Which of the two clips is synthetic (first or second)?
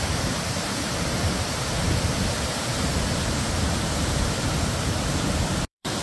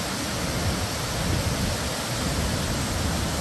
first